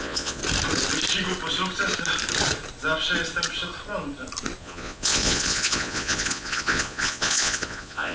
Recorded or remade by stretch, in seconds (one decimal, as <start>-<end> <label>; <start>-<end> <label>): 0.0-0.4 remade; 0.4-4.6 recorded; 4.6-8.1 remade